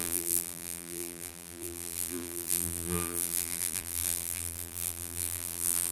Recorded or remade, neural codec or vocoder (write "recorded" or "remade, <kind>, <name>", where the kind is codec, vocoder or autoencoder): remade, vocoder, BigVGAN v2